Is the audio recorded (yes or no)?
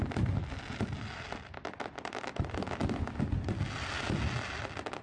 yes